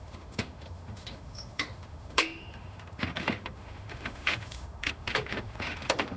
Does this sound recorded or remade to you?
remade